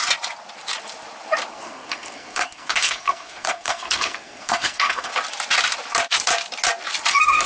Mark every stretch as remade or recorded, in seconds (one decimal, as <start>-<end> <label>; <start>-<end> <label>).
0.0-1.5 recorded; 1.5-5.1 remade; 5.1-7.1 recorded; 7.1-7.5 remade